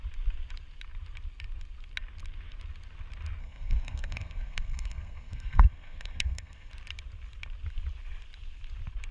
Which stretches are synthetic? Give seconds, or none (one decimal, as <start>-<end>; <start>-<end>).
3.4-6.7

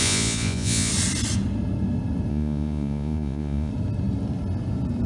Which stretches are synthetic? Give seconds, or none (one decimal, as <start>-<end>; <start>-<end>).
0.0-0.9; 2.3-3.7

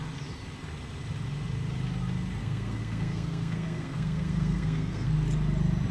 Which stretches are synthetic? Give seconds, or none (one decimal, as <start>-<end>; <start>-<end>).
2.4-5.1

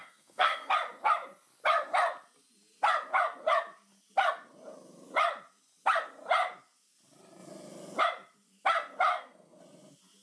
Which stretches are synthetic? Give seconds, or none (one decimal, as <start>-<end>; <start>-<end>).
0.0-0.7; 9.1-9.6

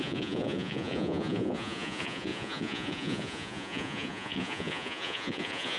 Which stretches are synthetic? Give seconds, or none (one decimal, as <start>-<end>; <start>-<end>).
0.0-5.8

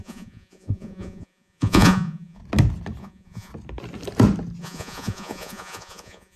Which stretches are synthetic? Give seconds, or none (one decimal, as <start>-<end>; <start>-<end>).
0.0-2.4; 3.0-3.5; 4.6-6.4